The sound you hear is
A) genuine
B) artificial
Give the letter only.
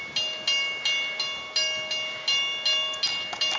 A